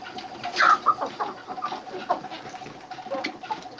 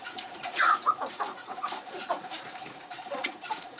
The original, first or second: first